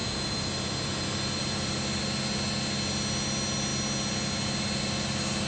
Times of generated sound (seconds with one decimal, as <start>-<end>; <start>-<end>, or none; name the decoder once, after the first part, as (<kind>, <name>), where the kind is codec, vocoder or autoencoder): 0.0-2.0 (vocoder, BigVGAN v2)